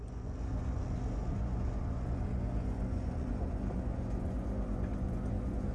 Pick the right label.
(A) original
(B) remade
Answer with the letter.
B